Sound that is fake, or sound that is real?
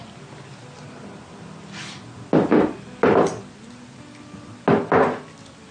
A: real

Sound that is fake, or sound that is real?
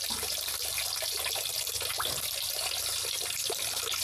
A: real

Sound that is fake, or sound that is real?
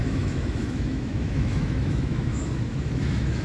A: fake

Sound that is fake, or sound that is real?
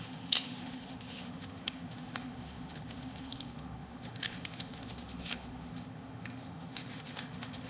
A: fake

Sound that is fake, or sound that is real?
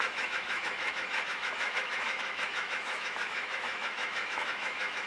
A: fake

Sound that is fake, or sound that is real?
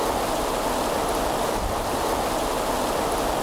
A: real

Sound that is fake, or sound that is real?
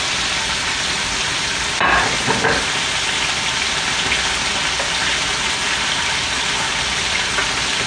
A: real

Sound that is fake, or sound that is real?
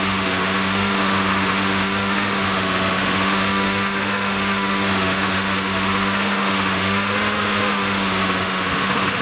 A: fake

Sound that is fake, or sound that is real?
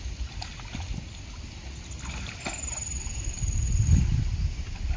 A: real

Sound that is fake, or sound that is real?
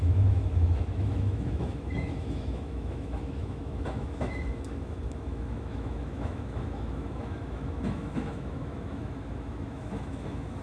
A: fake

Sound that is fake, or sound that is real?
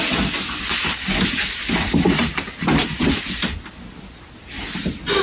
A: real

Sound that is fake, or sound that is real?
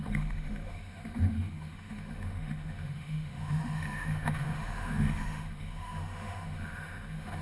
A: fake